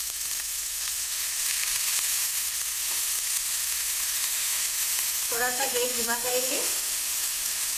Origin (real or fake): fake